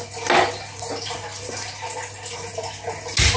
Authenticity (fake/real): real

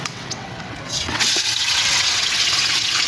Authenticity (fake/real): fake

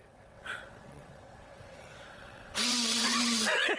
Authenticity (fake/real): fake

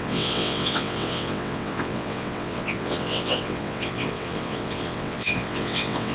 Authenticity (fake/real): fake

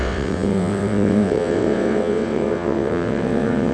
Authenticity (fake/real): fake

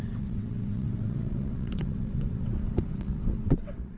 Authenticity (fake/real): fake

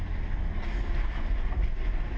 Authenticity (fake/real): real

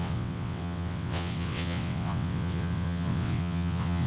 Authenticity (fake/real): fake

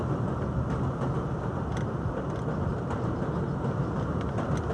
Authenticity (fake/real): real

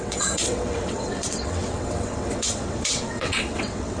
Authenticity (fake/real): fake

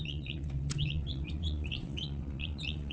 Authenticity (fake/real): fake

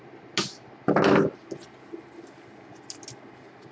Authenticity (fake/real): real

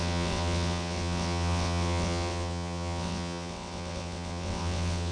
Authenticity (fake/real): fake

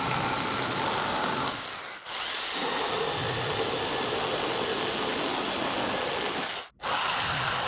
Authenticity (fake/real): real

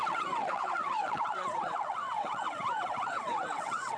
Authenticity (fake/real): fake